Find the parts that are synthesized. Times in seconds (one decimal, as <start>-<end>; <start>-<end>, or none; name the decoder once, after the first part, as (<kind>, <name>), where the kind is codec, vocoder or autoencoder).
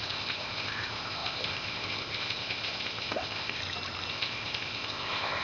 0.0-3.6 (codec, ZipCodec); 4.1-5.4